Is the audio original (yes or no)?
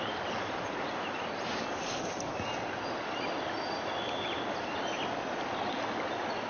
yes